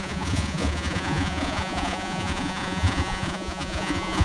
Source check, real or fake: fake